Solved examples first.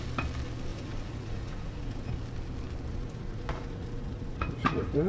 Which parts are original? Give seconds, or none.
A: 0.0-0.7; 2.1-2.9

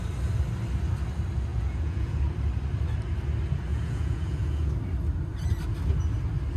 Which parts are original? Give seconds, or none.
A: 0.0-1.5; 2.2-3.7; 4.7-6.6

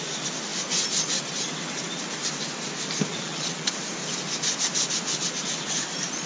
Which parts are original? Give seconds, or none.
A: 0.0-3.1; 3.7-6.3